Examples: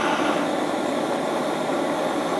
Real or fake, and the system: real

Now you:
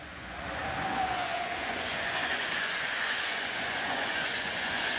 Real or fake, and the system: fake, vocoder, Vocos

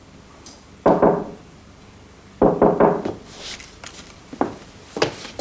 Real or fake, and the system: real